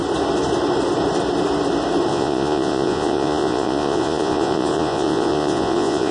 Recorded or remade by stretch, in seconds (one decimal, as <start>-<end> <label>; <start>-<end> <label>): 0.0-2.1 recorded; 2.1-6.1 remade